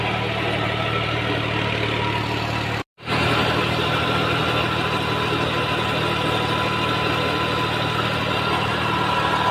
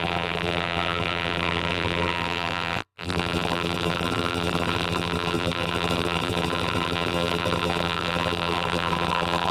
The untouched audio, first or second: first